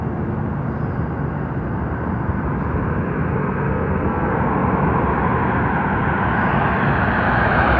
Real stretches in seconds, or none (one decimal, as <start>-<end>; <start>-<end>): 0.0-3.4; 4.3-7.8